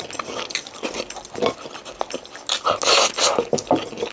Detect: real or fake real